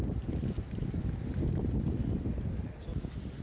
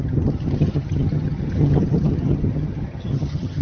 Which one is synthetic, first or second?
second